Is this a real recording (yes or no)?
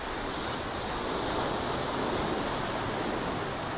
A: yes